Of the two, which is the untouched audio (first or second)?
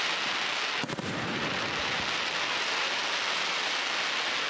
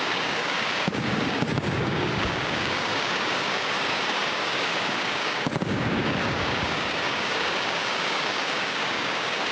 first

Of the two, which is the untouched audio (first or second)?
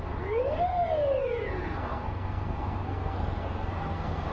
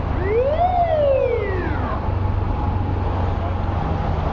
second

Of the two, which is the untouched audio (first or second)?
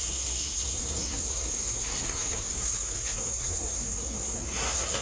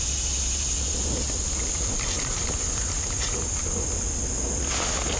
second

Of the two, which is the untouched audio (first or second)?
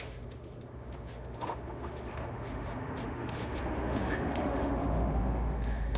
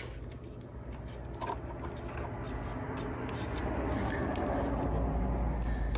second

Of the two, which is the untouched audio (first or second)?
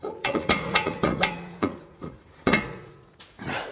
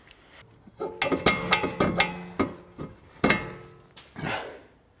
second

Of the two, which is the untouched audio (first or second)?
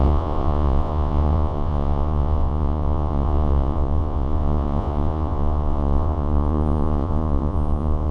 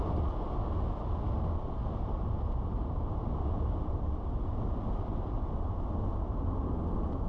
second